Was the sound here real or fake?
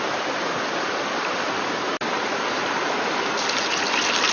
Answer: real